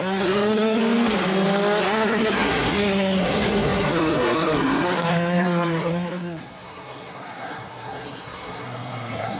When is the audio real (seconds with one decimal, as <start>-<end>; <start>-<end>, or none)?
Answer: 0.8-1.8